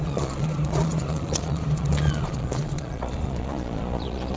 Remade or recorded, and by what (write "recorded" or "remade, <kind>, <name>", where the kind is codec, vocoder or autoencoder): remade, vocoder, Vocos